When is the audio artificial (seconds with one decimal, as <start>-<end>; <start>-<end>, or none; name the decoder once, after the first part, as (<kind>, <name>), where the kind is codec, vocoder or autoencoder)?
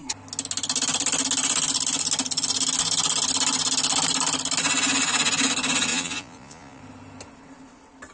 5.9-6.8 (vocoder, Vocos)